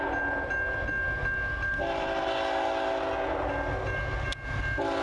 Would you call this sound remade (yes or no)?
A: no